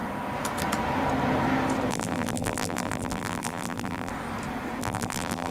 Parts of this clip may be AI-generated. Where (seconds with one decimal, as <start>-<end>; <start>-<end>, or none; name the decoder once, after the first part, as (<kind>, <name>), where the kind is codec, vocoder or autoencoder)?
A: 1.9-4.1 (vocoder, BigVGAN v2); 4.8-5.5